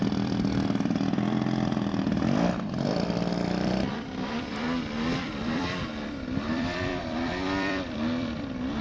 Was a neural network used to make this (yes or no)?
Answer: yes